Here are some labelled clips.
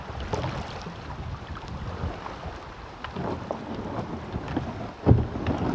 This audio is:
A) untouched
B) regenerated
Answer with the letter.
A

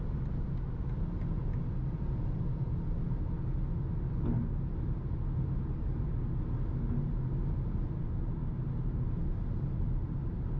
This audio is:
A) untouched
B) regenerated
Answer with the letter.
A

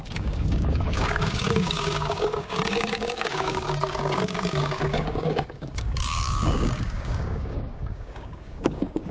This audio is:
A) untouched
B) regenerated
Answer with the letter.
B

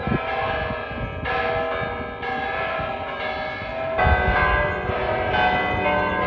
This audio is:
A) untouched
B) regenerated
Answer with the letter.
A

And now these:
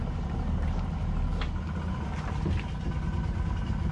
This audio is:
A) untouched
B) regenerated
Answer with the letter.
A